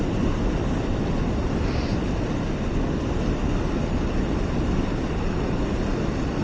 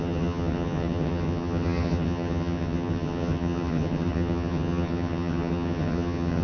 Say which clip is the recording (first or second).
first